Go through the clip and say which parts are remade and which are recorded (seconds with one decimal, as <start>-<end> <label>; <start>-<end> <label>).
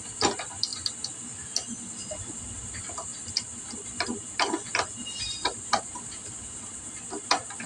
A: 0.0-7.7 recorded